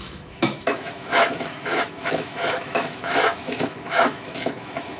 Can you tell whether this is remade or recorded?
remade